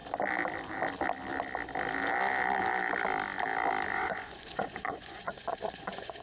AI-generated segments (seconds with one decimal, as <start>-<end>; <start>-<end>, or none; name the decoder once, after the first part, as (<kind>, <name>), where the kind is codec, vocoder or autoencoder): 3.9-6.2 (vocoder, Vocos)